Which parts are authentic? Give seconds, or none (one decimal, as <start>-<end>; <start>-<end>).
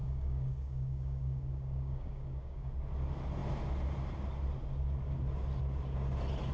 2.7-6.5